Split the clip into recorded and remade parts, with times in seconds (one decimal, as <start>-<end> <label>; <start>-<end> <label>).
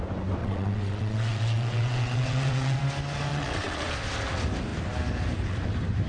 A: 0.0-0.4 recorded; 0.4-2.8 remade; 2.8-3.3 recorded; 3.3-3.9 remade; 3.9-6.1 recorded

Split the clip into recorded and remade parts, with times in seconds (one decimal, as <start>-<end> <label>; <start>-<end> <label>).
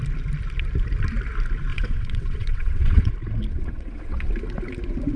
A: 0.0-1.7 recorded; 1.7-3.1 remade; 3.1-3.5 recorded; 3.5-4.3 remade; 4.3-5.2 recorded